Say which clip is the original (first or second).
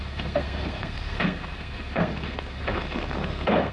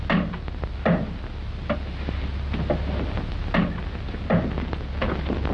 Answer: second